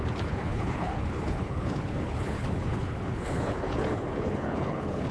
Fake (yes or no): yes